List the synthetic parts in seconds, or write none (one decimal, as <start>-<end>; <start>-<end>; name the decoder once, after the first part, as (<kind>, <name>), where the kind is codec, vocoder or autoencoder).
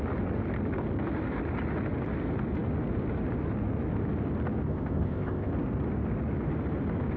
4.7-5.5 (codec, ZipCodec)